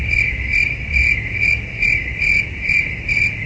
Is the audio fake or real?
real